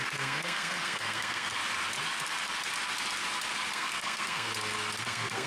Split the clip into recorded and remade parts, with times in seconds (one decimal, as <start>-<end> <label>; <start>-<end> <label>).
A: 0.0-1.6 remade; 1.6-3.7 recorded; 3.7-4.5 remade; 4.5-5.0 recorded; 5.0-5.5 remade